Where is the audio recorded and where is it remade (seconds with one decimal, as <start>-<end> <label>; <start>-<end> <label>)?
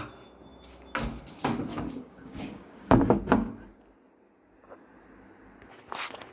0.0-1.7 recorded; 1.7-3.0 remade; 3.0-6.3 recorded